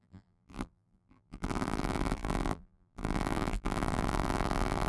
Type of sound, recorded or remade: remade